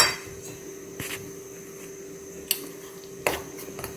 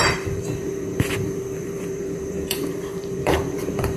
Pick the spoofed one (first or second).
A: second